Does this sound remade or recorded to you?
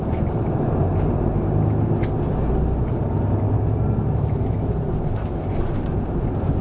recorded